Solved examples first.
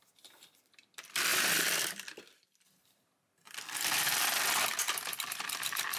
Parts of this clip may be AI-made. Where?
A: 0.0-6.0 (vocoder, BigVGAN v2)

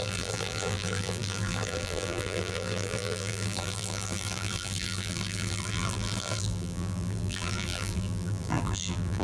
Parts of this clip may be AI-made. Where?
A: 0.0-9.2 (vocoder, BigVGAN v2)

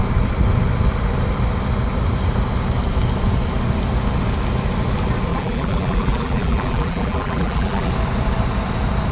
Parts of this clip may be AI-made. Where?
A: 5.3-7.9 (vocoder, BigVGAN v2)

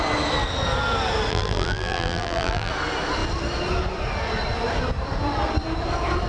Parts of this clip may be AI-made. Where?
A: 1.3-2.7 (vocoder, BigVGAN v2)

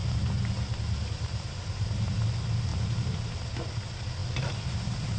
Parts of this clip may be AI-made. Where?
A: 2.7-3.5 (vocoder, BigVGAN v2)

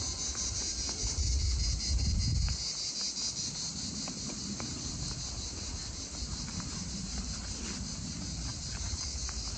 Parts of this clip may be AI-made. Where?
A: 3.7-4.9 (vocoder, BigVGAN v2); 8.5-9.1